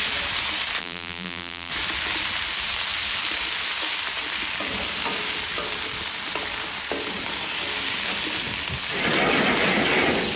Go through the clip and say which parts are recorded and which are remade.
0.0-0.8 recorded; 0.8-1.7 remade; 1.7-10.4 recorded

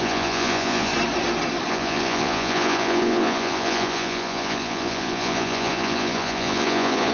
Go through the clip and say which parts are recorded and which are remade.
0.0-0.9 remade; 0.9-1.7 recorded; 1.7-7.1 remade

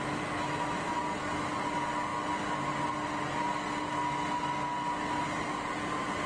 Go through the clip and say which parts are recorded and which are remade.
0.0-6.3 recorded

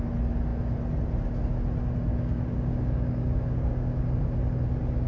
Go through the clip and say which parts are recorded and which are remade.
0.0-2.1 recorded; 2.1-4.0 remade; 4.0-5.1 recorded

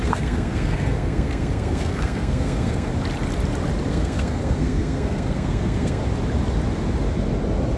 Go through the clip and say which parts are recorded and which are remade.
0.0-2.9 remade; 2.9-3.9 recorded; 3.9-6.0 remade; 6.0-7.8 recorded

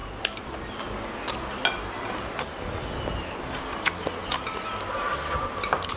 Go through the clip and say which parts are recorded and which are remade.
0.0-6.0 recorded